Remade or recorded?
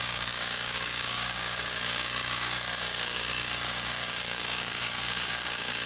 remade